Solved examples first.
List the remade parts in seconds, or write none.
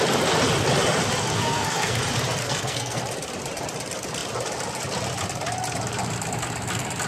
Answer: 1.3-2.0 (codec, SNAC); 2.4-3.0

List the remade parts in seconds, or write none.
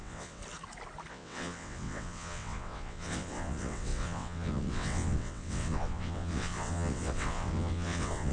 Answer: 0.0-0.4 (vocoder, WaveNeXt); 1.1-8.3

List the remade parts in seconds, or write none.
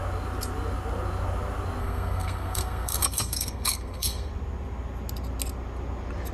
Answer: 1.8-4.3 (codec, SNAC)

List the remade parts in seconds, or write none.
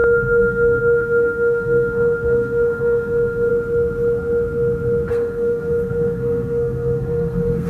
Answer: 0.0-3.5 (codec, SNAC); 5.1-7.7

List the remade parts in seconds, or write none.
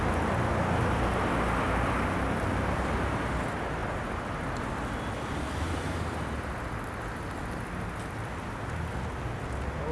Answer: 3.8-5.6 (vocoder, BigVGAN v2)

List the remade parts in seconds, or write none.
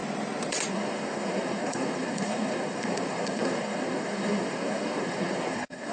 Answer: 0.7-5.9 (codec, SNAC)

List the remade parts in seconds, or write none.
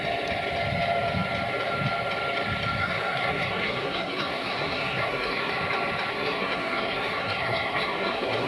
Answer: 2.8-5.5 (codec, SNAC); 6.1-8.5